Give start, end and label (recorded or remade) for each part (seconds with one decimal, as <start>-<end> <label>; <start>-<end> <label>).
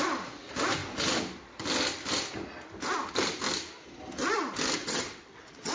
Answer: 0.0-4.8 recorded; 4.8-5.7 remade